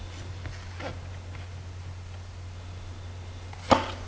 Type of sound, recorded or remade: recorded